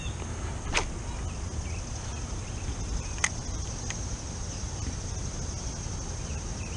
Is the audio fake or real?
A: real